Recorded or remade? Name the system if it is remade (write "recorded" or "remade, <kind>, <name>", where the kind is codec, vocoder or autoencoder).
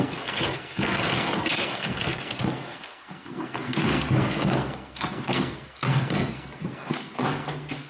remade, codec, SNAC